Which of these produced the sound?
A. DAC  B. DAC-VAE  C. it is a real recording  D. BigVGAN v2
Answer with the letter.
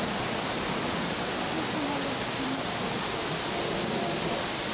C